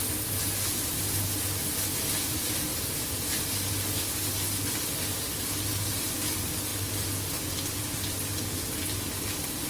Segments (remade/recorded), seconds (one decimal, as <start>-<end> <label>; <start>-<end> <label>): 0.0-9.7 recorded